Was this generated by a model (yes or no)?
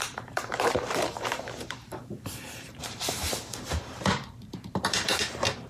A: yes